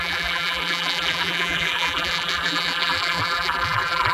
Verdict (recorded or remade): remade